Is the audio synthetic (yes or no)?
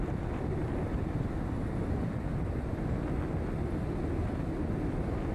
no